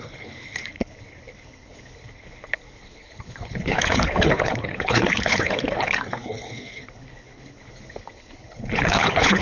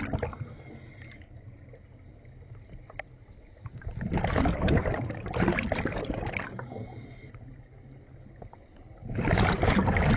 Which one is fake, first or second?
first